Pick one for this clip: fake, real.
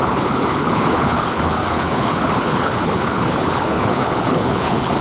fake